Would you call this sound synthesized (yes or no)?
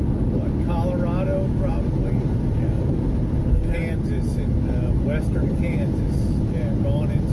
no